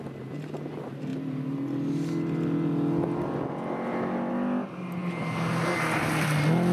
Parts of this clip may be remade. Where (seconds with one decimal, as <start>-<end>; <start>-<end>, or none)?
none